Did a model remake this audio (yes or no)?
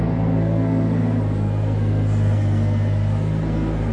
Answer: yes